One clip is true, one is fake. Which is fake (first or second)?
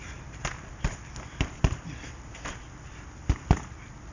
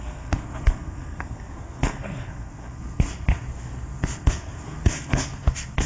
second